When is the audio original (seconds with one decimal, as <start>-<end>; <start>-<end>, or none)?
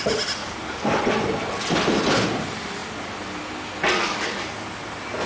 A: 0.0-0.4; 1.0-4.0; 4.8-5.3